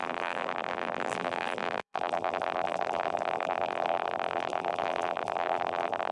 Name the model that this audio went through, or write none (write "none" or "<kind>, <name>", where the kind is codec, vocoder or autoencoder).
vocoder, BigVGAN v2